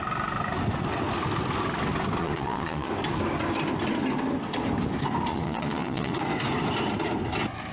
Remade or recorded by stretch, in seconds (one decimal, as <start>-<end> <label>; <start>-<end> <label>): 0.0-2.2 recorded; 2.2-2.9 remade; 2.9-5.3 recorded; 5.3-6.2 remade; 6.2-7.7 recorded